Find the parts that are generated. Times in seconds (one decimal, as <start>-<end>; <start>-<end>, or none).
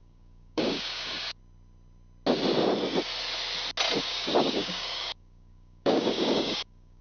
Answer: 0.0-1.4; 4.0-7.0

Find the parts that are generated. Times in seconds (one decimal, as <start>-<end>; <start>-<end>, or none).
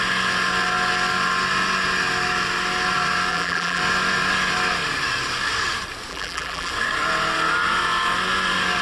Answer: 3.3-3.8; 6.1-6.7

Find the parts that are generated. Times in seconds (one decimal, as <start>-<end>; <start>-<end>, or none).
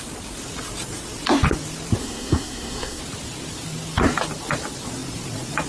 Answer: 2.0-3.0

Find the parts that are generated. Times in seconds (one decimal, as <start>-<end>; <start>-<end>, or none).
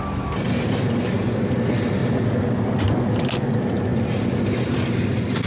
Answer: none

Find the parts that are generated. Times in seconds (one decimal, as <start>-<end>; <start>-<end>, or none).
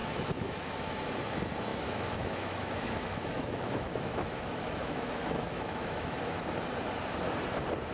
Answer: 0.0-1.1; 1.7-6.4